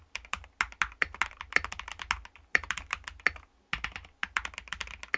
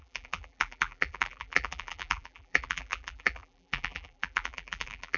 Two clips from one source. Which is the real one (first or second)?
first